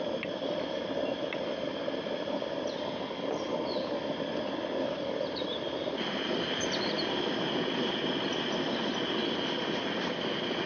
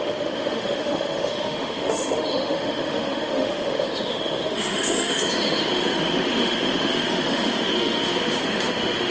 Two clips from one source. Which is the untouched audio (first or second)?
first